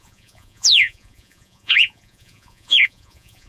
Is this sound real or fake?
fake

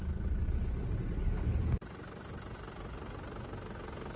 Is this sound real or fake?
real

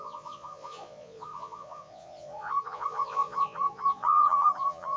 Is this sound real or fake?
fake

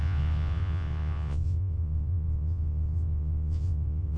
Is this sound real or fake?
fake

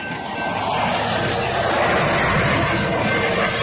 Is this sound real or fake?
real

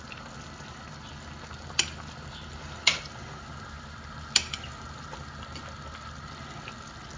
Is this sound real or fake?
real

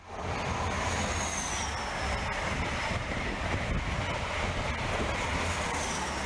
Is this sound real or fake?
real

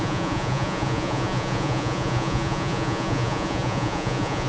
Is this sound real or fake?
fake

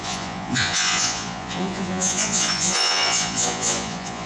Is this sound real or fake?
fake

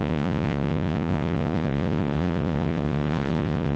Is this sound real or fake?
fake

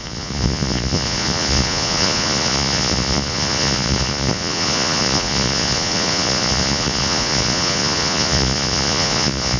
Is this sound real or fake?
fake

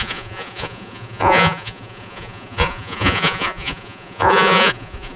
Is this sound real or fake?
fake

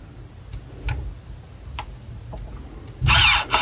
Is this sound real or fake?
real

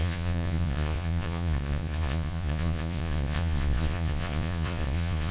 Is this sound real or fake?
fake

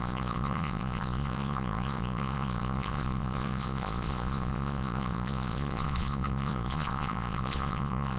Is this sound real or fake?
fake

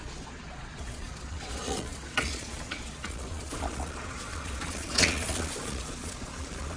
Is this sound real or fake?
fake